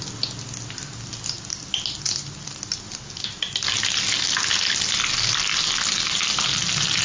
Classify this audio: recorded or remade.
recorded